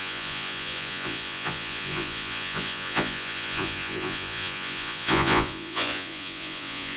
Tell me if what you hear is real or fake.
fake